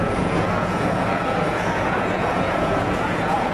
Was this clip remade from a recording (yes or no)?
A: yes